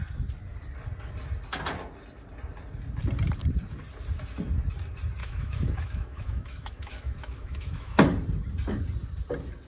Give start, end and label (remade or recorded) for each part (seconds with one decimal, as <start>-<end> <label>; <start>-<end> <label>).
0.0-5.2 recorded; 5.2-8.0 remade; 8.0-9.7 recorded